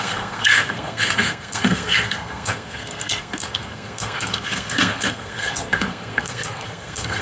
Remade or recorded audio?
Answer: remade